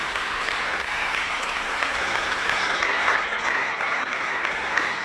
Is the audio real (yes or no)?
no